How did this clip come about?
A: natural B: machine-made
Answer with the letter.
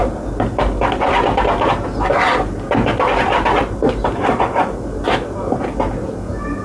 A